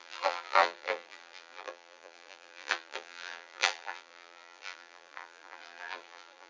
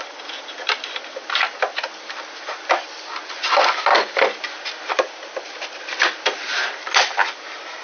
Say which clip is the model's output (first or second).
first